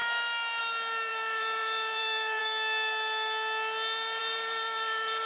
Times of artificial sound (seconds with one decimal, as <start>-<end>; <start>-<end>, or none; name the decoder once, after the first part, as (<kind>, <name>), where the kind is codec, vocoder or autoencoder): 1.1-2.4 (vocoder, BigVGAN v2); 4.2-5.3